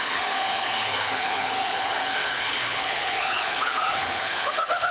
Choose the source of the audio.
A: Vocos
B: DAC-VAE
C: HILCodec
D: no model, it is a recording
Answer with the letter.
C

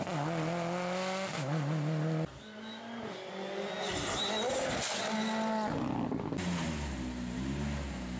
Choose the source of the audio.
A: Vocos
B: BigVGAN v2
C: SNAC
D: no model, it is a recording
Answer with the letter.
D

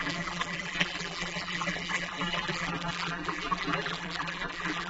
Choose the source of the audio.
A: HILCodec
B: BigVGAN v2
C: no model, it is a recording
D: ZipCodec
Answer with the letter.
B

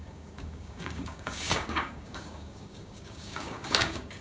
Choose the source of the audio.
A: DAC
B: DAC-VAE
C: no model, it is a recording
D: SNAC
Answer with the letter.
A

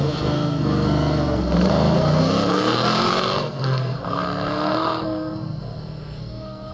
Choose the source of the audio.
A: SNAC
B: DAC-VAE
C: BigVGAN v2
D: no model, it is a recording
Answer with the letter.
A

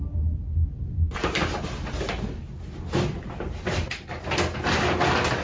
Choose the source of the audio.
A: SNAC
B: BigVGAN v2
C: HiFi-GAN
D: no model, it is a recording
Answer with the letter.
D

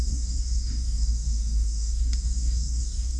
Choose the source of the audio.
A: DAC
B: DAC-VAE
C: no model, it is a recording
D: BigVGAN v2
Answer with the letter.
A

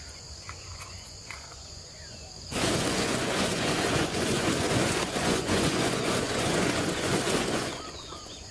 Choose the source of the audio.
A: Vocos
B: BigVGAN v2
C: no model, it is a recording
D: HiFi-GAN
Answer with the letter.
A